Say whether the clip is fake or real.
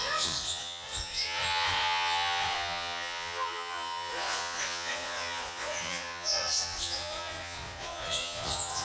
fake